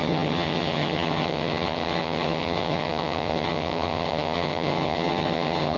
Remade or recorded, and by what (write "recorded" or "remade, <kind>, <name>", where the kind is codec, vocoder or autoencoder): remade, vocoder, HiFi-GAN